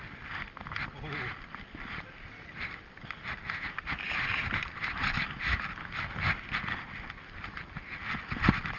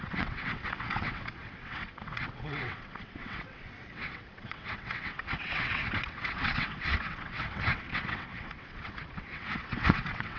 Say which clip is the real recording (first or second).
first